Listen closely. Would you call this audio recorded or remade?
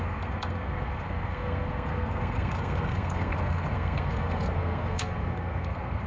remade